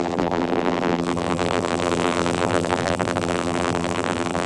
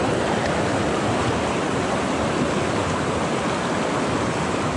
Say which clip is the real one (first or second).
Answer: second